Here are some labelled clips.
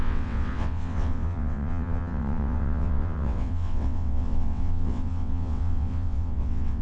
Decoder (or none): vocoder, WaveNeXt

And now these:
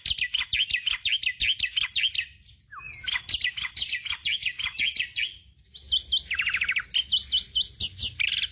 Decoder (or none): none